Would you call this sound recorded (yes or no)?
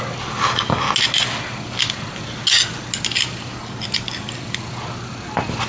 yes